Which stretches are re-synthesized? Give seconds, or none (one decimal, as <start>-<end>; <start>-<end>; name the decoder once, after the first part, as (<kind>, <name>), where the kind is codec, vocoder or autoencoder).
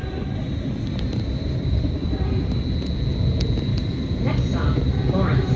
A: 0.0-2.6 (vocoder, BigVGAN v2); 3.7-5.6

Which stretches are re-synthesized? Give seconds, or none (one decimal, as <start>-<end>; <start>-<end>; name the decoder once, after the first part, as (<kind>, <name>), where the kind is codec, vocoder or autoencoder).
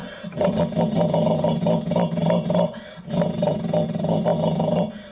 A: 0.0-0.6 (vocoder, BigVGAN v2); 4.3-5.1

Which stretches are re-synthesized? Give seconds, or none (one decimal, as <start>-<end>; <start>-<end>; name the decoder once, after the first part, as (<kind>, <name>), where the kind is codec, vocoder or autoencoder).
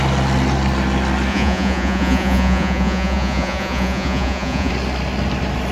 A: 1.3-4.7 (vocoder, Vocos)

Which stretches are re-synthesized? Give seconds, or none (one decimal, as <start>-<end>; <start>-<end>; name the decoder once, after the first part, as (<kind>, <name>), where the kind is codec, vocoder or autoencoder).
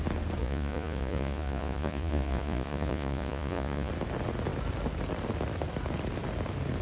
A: 0.4-3.9 (vocoder, Vocos)